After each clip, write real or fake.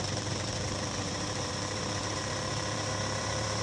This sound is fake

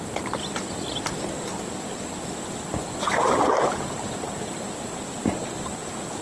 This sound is real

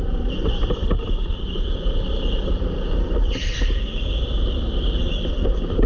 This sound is fake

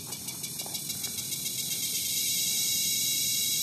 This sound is real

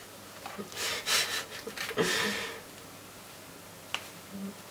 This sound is real